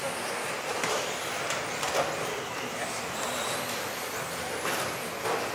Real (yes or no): yes